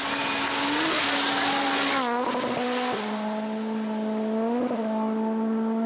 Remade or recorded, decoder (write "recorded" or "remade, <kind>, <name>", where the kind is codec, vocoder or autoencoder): recorded